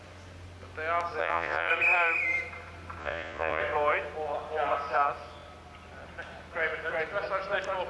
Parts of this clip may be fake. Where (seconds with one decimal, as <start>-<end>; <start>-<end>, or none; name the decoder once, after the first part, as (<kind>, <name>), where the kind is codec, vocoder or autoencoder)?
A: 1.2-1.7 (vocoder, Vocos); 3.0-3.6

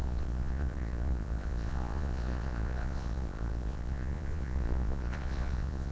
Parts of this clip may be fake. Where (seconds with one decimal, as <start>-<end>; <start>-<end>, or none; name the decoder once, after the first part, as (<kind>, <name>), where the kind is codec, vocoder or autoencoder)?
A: 0.0-5.9 (vocoder, Vocos)

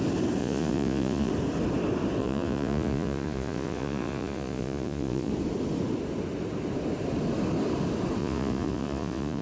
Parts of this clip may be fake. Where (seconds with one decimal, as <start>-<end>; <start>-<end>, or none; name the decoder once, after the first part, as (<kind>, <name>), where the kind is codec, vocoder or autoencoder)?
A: 0.4-1.3 (vocoder, Vocos); 2.2-5.3; 8.2-9.4